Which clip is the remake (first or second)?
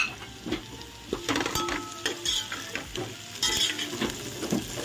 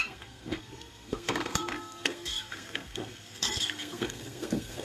second